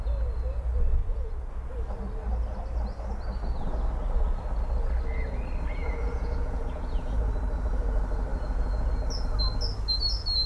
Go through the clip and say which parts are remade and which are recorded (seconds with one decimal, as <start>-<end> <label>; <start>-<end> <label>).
0.0-5.7 recorded; 5.7-7.1 remade; 7.1-8.3 recorded; 8.3-8.9 remade; 8.9-10.5 recorded

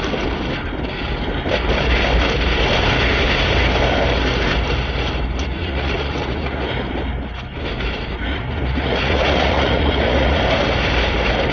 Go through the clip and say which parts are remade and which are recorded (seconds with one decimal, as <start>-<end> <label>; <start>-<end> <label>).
0.0-5.4 recorded; 5.4-6.7 remade; 6.7-8.3 recorded; 8.3-10.4 remade; 10.4-11.5 recorded